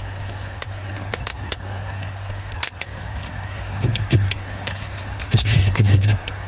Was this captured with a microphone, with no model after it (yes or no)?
no